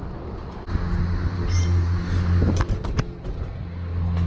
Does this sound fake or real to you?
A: real